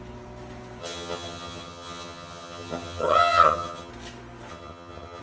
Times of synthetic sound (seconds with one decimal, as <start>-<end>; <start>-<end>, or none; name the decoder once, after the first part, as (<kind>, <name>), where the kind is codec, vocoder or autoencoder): 0.8-3.9 (vocoder, HiFi-GAN); 4.5-5.2